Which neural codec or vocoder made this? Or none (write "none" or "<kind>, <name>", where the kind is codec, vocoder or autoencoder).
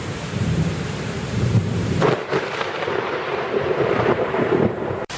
vocoder, BigVGAN v2